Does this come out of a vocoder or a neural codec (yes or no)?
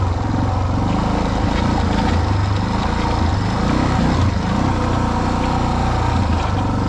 no